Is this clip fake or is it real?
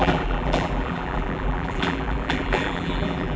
fake